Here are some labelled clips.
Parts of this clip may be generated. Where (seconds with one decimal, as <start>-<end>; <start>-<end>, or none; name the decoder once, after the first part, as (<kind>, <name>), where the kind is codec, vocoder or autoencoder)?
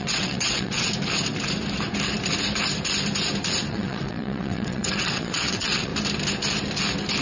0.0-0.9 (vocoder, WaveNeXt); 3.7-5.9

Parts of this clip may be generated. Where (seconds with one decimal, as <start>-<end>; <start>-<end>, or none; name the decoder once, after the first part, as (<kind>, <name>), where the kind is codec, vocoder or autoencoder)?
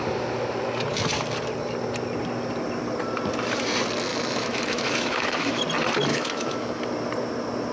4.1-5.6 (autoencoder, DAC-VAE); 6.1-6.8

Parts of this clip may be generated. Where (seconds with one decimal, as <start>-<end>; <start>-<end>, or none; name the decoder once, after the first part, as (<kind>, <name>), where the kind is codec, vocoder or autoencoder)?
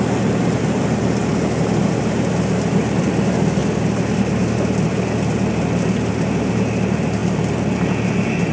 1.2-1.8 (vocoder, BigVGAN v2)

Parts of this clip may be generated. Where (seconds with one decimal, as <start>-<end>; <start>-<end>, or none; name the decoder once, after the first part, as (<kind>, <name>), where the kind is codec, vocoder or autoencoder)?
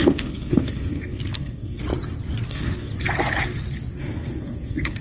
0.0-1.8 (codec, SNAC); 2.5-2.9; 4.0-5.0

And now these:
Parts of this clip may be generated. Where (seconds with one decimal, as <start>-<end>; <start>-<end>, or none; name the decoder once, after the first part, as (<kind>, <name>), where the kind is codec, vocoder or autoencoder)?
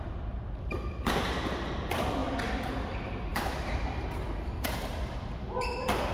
3.3-6.1 (vocoder, BigVGAN v2)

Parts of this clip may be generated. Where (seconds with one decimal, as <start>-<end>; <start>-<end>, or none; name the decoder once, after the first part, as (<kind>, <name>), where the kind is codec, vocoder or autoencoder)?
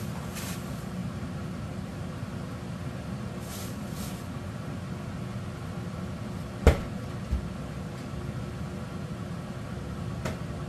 1.0-2.6 (vocoder, BigVGAN v2)